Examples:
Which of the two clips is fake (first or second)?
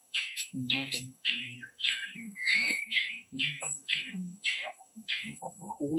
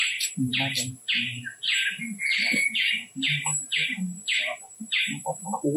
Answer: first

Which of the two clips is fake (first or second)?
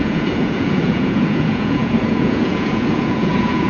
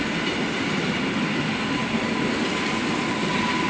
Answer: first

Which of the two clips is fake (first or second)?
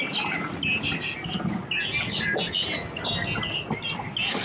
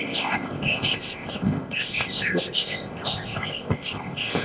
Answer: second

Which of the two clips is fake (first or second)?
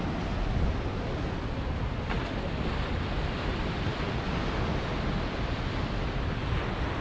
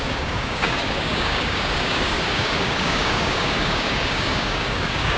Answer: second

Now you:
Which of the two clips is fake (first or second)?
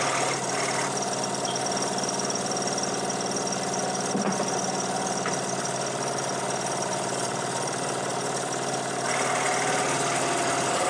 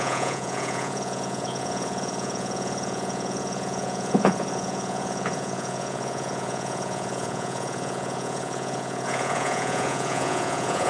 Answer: second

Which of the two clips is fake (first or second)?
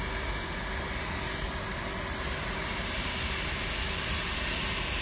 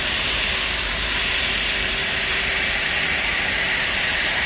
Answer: second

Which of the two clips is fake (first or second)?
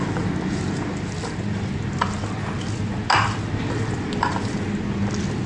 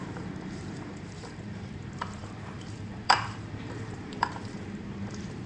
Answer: second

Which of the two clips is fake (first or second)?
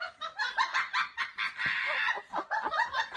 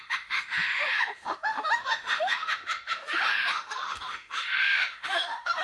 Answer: second